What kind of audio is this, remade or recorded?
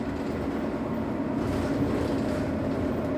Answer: recorded